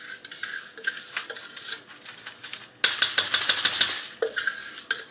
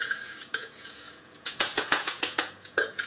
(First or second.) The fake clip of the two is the second